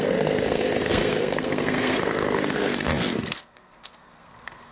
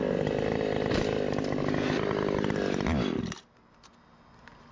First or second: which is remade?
first